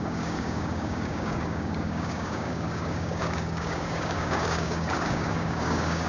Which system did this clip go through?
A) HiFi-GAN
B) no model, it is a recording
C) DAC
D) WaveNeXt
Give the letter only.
C